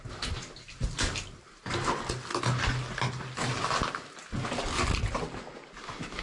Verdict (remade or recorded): recorded